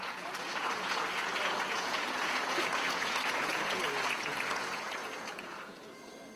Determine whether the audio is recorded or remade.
remade